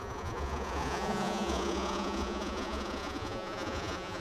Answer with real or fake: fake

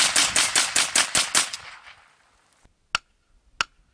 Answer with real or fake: real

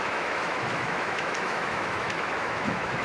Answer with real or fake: fake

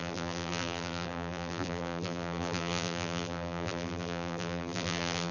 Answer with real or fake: fake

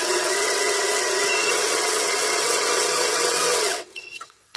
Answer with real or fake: fake